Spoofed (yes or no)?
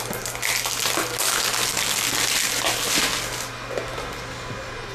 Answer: no